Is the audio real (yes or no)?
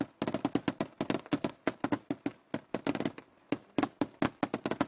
yes